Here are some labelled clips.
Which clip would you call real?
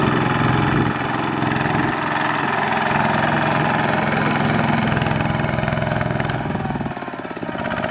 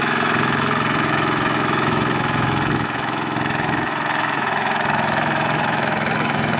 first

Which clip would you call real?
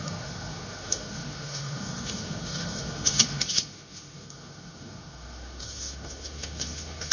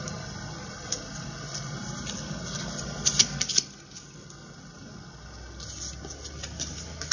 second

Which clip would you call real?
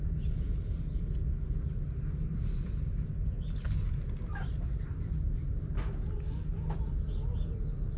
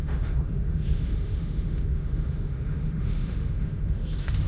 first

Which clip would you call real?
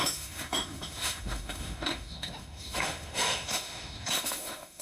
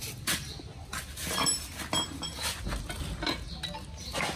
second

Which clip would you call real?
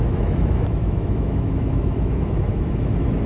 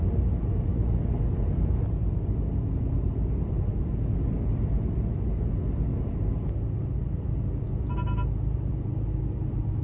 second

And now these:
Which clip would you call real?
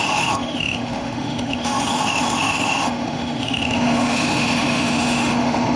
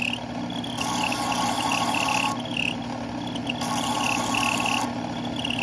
second